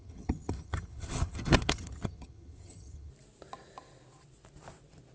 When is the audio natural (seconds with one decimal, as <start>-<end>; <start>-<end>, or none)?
3.1-5.1